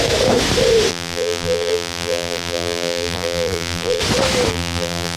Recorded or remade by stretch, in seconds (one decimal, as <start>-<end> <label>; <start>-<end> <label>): 0.0-0.9 recorded; 0.9-4.0 remade; 4.0-4.5 recorded; 4.5-5.2 remade